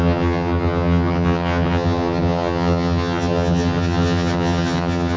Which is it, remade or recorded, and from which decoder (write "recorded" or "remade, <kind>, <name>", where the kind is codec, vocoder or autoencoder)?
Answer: remade, vocoder, HiFi-GAN